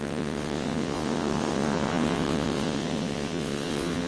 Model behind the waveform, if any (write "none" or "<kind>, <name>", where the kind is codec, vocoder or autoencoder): vocoder, WaveNeXt